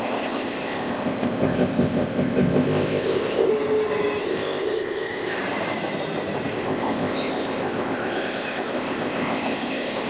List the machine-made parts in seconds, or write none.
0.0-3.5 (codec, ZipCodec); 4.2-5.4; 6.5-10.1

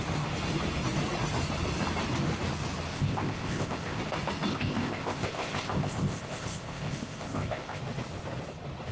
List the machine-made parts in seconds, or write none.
2.9-4.0 (codec, ZipCodec); 4.5-7.8

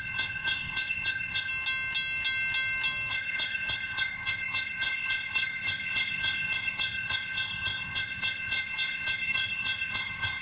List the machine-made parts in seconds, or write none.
0.0-1.5 (codec, ZipCodec); 3.1-10.4